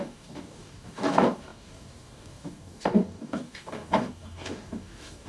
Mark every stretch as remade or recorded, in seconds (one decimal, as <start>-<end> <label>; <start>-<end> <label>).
0.0-5.3 remade